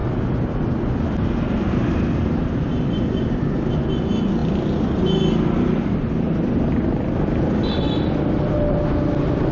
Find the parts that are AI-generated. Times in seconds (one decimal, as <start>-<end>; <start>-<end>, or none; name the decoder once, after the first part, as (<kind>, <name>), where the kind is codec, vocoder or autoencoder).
none